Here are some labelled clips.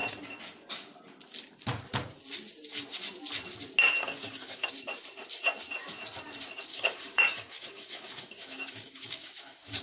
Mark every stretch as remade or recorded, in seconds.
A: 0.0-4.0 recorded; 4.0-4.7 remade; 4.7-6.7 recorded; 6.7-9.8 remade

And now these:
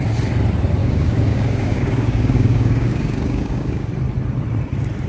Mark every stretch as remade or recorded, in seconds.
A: 0.0-0.8 recorded; 0.8-3.9 remade; 3.9-5.1 recorded

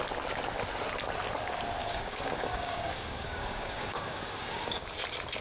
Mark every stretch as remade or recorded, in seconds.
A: 0.0-1.8 recorded; 1.8-5.0 remade; 5.0-5.4 recorded

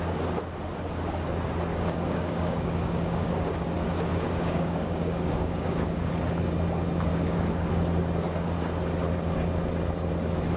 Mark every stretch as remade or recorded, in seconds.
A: 0.0-1.7 recorded; 1.7-3.3 remade; 3.3-4.1 recorded; 4.1-6.1 remade; 6.1-7.1 recorded; 7.1-7.7 remade; 7.7-10.6 recorded

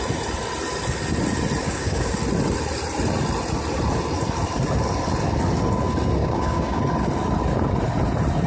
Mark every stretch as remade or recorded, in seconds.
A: 0.0-1.6 recorded; 1.6-2.2 remade; 2.2-6.2 recorded; 6.2-6.8 remade; 6.8-8.5 recorded

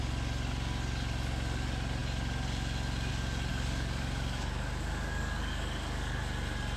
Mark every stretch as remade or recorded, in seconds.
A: 0.0-3.5 recorded; 3.5-6.2 remade; 6.2-6.8 recorded